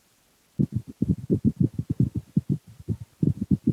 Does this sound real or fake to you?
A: real